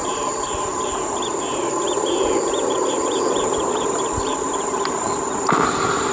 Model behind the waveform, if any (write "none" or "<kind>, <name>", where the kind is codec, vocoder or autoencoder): none